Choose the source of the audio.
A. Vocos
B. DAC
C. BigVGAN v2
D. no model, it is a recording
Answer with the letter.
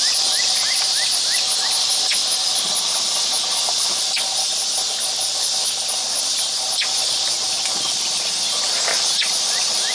C